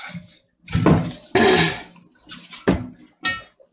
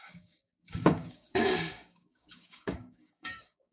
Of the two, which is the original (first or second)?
first